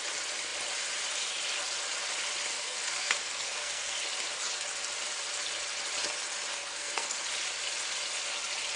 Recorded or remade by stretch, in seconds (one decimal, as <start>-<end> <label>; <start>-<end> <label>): 0.0-2.5 recorded; 2.5-4.0 remade; 4.0-6.5 recorded; 6.5-7.2 remade; 7.2-8.8 recorded